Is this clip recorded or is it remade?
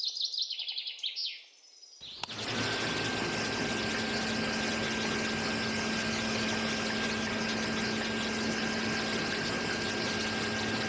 recorded